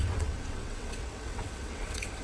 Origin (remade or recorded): remade